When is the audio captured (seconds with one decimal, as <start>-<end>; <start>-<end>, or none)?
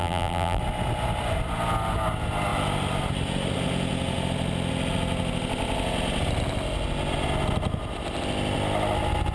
0.6-9.3